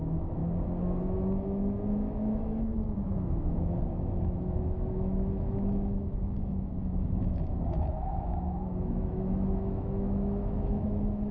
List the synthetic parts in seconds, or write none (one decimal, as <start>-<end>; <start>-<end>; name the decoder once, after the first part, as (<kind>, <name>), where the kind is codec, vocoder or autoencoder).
0.0-0.4 (autoencoder, DAC-VAE); 1.0-11.3